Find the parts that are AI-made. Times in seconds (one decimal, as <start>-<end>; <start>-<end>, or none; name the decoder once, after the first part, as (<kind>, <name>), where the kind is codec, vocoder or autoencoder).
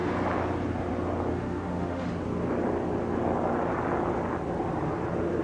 1.3-2.1 (autoencoder, DAC-VAE)